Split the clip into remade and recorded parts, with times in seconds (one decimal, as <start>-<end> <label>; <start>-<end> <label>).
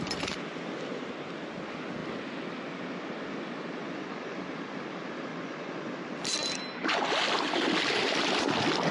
0.0-3.8 recorded; 3.8-4.4 remade; 4.4-5.3 recorded; 5.3-5.9 remade; 5.9-8.9 recorded